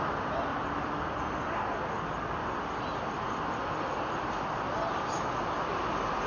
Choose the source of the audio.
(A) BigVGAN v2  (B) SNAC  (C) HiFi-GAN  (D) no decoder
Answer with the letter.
D